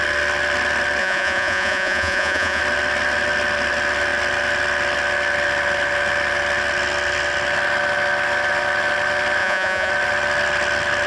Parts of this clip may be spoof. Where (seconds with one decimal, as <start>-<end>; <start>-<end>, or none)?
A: 1.0-2.6; 9.4-9.9